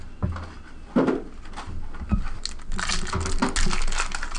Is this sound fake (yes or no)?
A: no